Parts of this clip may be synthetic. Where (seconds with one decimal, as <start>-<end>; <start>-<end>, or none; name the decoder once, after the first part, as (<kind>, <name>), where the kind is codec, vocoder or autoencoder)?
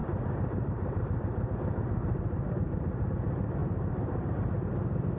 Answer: 0.0-3.1 (vocoder, BigVGAN v2); 3.6-4.5